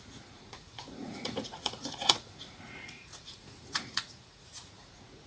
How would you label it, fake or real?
fake